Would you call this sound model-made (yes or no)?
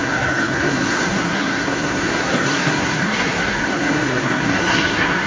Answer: yes